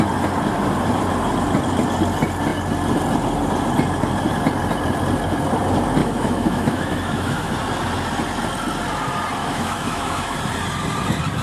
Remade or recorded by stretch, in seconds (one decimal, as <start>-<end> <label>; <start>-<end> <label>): 0.0-6.0 recorded; 6.0-7.5 remade; 7.5-9.4 recorded; 9.4-10.4 remade; 10.4-11.4 recorded